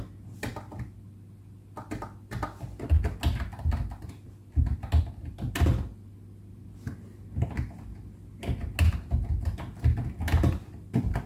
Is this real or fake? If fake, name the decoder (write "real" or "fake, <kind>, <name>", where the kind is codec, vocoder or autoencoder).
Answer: real